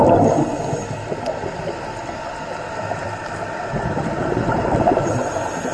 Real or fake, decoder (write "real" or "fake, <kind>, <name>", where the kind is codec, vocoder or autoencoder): real